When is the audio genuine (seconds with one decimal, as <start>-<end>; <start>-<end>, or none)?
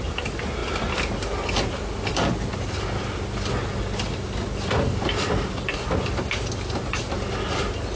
0.0-8.0